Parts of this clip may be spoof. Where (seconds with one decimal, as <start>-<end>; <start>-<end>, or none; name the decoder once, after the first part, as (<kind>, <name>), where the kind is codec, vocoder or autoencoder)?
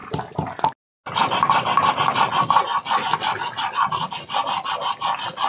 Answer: none